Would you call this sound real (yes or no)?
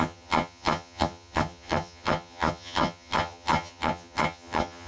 no